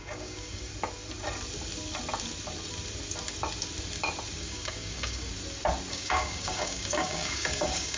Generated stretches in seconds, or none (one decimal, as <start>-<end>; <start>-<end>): 0.0-0.7; 4.4-5.3; 5.9-8.0